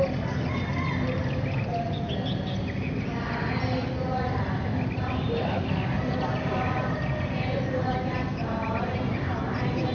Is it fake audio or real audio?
real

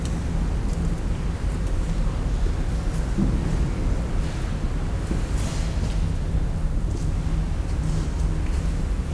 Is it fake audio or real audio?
real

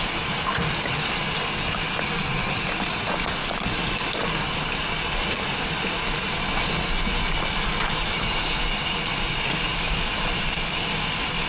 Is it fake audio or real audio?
real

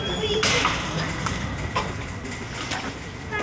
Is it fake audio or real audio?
real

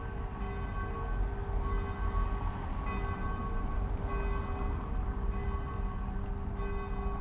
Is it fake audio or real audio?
real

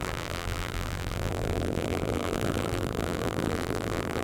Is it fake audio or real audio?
fake